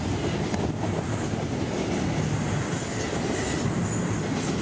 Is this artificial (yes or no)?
no